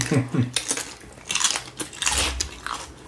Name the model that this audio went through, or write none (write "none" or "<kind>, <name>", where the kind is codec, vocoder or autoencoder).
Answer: none